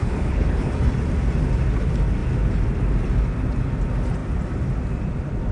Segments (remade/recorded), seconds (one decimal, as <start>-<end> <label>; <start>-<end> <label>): 0.0-0.7 remade; 0.7-5.5 recorded